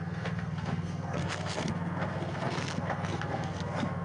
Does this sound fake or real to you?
fake